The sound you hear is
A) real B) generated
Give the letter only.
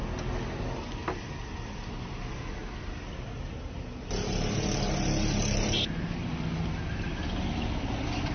A